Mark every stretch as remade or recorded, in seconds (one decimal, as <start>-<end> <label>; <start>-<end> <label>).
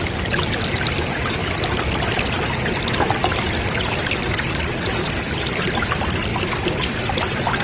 0.0-1.4 remade; 1.4-2.7 recorded; 2.7-3.2 remade; 3.2-4.1 recorded; 4.1-6.3 remade; 6.3-6.8 recorded; 6.8-7.6 remade